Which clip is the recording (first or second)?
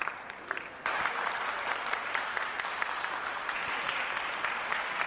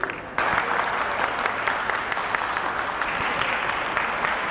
second